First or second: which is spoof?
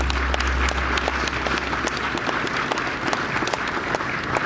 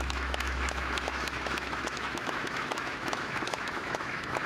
second